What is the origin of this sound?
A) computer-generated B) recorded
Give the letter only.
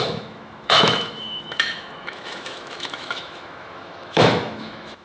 A